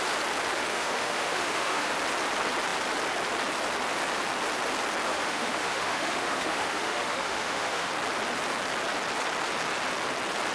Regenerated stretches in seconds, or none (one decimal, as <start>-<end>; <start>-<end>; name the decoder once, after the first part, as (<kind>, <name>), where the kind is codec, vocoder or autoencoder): 0.7-1.9 (autoencoder, DAC-VAE); 5.1-7.9